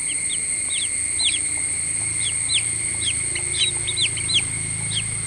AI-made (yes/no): no